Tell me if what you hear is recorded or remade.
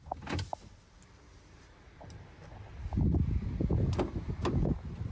recorded